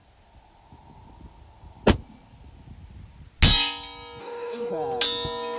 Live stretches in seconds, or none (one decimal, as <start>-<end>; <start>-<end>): 0.0-4.2; 4.7-5.6